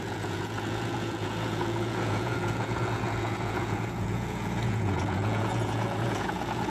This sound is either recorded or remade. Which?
remade